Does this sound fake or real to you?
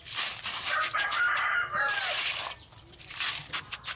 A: real